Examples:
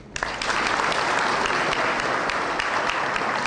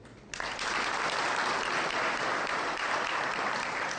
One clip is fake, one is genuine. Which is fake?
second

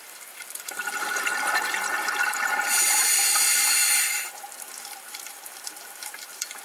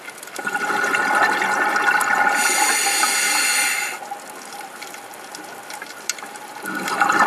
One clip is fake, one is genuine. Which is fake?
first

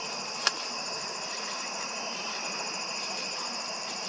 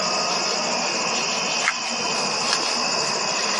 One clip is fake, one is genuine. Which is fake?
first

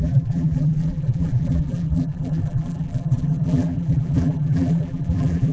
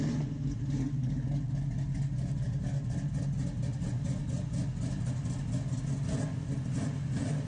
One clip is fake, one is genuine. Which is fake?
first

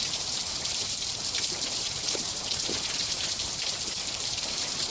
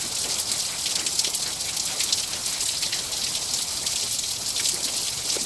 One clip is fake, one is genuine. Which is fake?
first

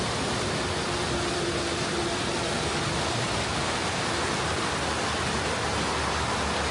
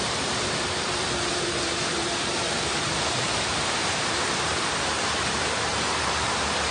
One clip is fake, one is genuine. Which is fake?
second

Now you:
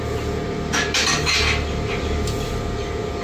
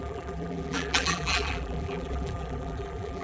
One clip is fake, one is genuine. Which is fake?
second